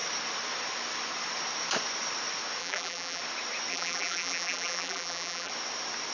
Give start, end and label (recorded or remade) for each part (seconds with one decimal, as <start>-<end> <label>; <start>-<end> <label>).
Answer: 0.0-2.6 recorded; 2.6-3.2 remade; 3.2-3.7 recorded; 3.7-5.5 remade; 5.5-6.1 recorded